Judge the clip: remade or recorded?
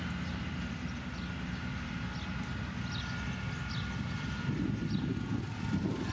recorded